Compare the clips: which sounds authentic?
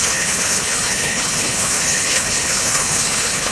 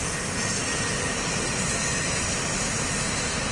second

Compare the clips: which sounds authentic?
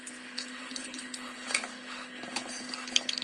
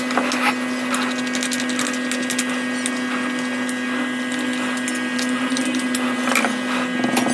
second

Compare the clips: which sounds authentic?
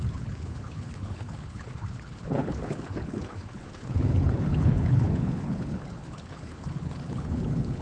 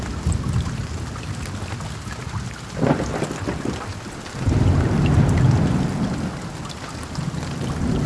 second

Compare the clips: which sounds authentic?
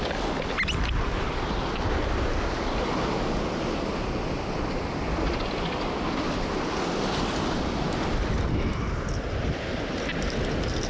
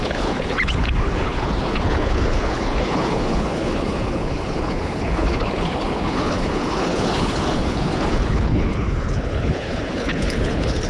first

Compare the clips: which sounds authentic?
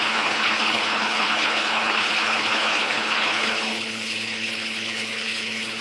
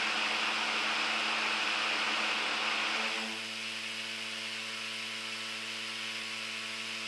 second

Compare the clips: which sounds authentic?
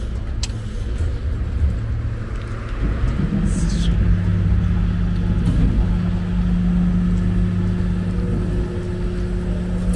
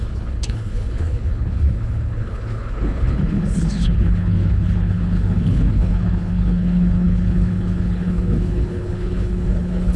first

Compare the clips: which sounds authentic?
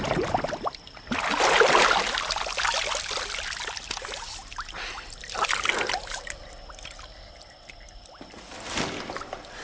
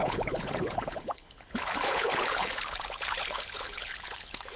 first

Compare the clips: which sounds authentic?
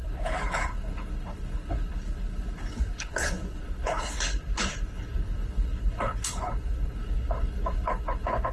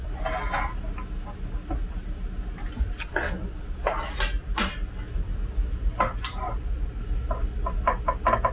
second